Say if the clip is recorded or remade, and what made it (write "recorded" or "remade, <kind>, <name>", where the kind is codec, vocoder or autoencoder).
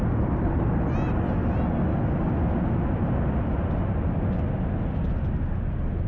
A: recorded